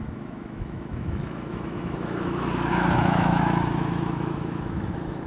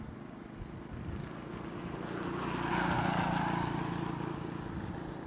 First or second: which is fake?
first